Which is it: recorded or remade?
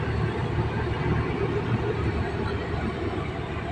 recorded